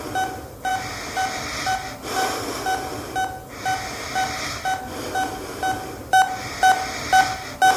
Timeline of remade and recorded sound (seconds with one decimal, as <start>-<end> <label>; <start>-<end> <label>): 0.0-6.0 recorded; 6.0-7.2 remade; 7.2-7.8 recorded